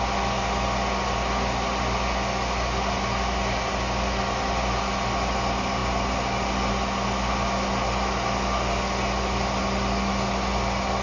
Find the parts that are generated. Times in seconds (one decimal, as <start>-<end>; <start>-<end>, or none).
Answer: none